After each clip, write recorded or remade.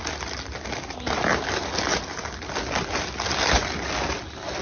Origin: recorded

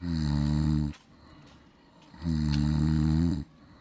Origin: recorded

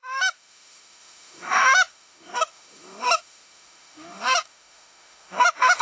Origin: remade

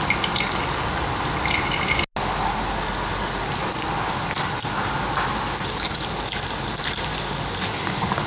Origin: recorded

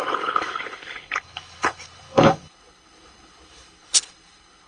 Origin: remade